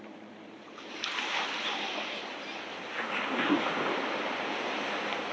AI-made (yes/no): no